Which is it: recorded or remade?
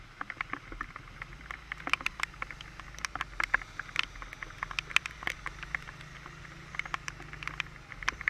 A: recorded